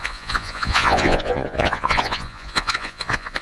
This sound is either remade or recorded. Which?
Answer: remade